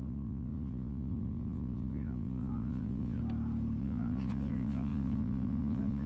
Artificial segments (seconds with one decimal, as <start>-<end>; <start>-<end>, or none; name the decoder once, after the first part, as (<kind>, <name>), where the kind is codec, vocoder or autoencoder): 0.0-3.2 (vocoder, Vocos); 3.8-6.1